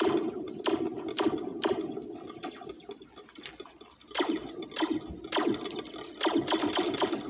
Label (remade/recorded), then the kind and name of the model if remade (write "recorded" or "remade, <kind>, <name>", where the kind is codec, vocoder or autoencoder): recorded